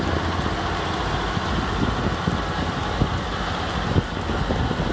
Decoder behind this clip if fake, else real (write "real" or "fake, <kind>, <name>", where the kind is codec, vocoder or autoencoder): real